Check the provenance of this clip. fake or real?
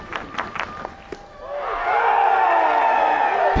real